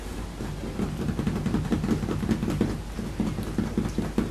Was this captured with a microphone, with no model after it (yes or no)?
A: yes